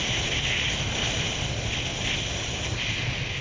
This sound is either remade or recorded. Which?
recorded